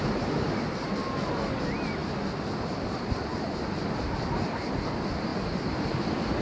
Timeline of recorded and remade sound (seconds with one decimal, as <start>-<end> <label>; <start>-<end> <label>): 0.0-6.4 recorded